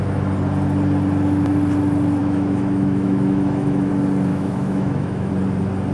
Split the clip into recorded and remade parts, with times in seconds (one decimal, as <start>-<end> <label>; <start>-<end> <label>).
0.0-2.2 recorded; 2.2-3.9 remade; 3.9-4.3 recorded; 4.3-5.3 remade; 5.3-5.9 recorded